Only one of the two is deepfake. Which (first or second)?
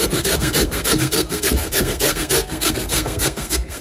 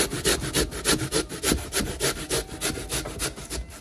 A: first